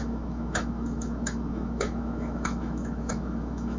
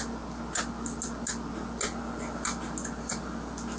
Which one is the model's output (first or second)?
first